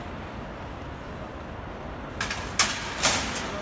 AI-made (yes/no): no